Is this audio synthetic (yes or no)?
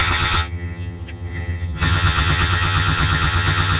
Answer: yes